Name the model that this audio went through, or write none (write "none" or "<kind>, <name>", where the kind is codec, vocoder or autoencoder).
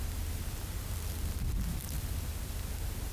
none